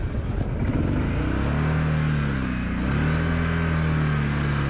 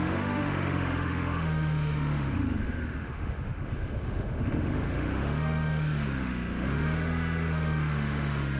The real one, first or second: first